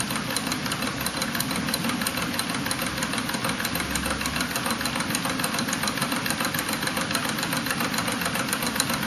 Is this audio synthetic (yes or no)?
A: no